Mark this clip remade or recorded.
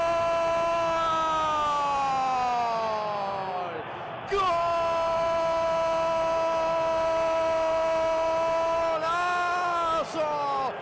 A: recorded